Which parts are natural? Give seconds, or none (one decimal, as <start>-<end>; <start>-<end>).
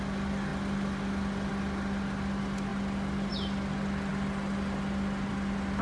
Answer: 0.0-5.8